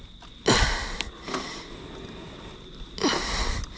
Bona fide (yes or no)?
yes